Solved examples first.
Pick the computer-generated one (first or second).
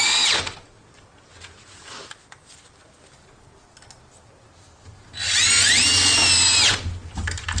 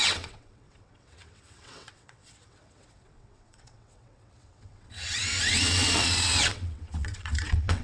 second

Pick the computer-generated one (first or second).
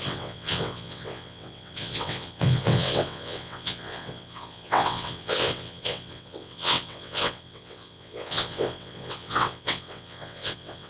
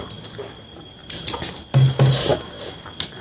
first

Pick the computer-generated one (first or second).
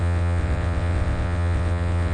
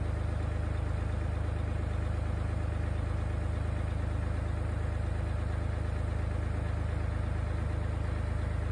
first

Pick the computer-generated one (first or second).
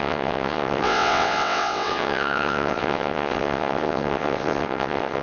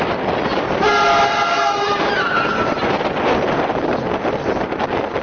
first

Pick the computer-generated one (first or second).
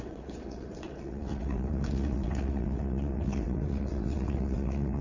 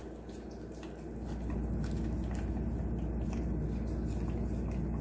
first